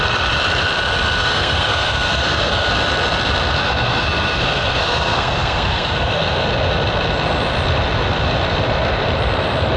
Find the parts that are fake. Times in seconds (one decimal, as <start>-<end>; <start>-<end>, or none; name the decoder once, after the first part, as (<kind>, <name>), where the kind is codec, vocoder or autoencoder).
1.2-2.7 (codec, SNAC); 3.6-6.4